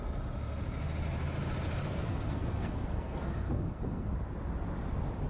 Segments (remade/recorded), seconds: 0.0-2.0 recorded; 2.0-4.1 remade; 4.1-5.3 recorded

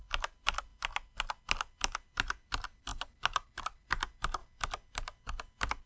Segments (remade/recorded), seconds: 0.0-5.9 recorded

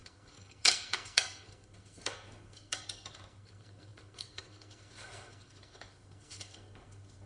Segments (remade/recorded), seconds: 0.0-7.3 remade

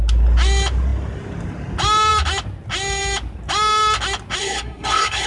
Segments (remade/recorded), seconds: 0.0-4.4 recorded; 4.4-5.3 remade

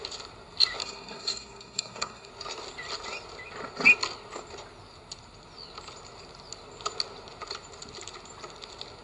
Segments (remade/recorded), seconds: 0.0-0.8 recorded; 0.8-2.3 remade; 2.3-9.0 recorded

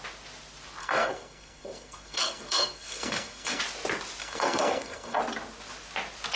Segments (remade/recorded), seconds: 0.0-0.8 recorded; 0.8-3.6 remade; 3.6-4.2 recorded; 4.2-5.2 remade; 5.2-6.4 recorded

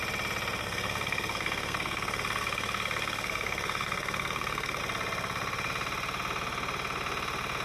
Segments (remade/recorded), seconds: 0.0-0.6 recorded; 0.6-4.8 remade; 4.8-7.6 recorded

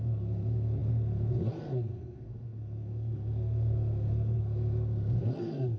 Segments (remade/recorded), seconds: 0.0-5.8 remade